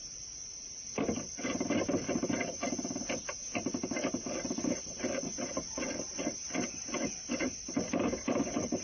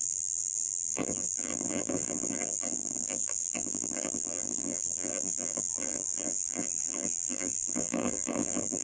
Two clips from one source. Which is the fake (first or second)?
second